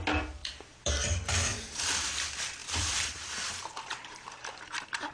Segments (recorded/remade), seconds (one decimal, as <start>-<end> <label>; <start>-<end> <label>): 0.0-0.4 recorded; 0.4-0.9 remade; 0.9-1.5 recorded; 1.5-2.1 remade; 2.1-2.6 recorded; 2.6-5.1 remade